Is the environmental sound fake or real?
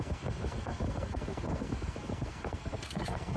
fake